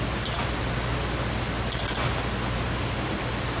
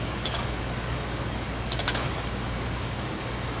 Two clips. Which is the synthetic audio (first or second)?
second